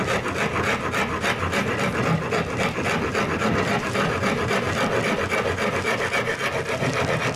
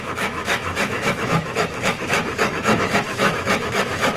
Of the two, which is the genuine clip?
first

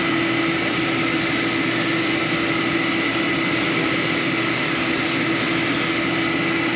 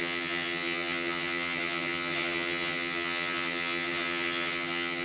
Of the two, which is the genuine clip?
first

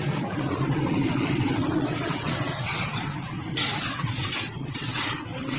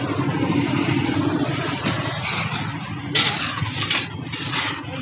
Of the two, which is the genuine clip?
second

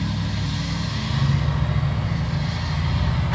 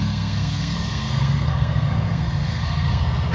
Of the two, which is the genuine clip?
first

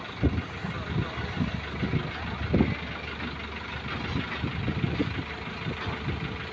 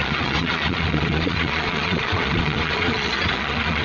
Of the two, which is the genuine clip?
first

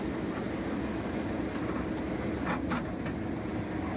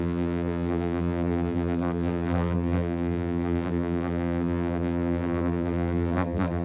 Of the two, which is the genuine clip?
first